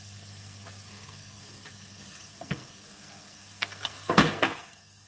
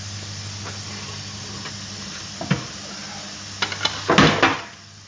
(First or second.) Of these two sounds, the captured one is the second